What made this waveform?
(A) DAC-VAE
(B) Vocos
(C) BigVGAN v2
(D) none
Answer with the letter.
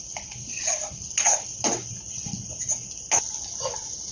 D